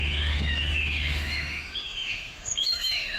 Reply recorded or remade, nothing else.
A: remade